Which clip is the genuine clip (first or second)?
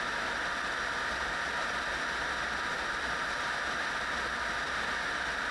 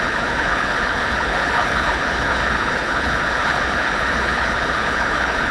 first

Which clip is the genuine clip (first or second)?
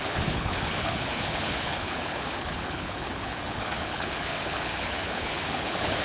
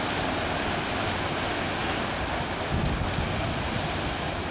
second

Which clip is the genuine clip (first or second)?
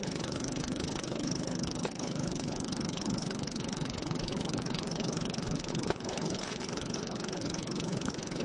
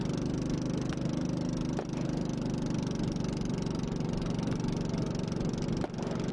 second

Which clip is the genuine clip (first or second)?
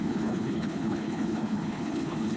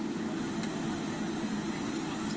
second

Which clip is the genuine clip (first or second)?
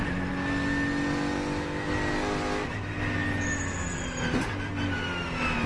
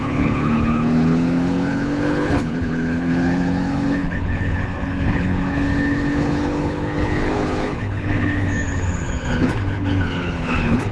first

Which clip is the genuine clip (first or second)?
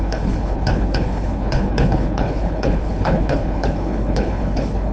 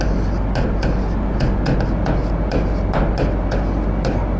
second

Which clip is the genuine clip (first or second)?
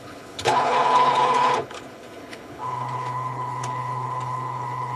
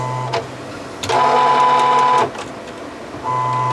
second